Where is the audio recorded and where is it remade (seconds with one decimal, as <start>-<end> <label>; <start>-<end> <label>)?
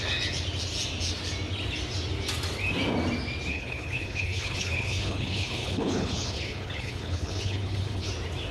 0.0-3.5 recorded; 3.5-8.1 remade; 8.1-8.5 recorded